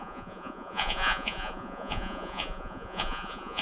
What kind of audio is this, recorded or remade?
remade